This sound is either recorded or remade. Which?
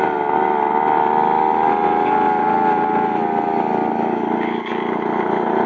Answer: recorded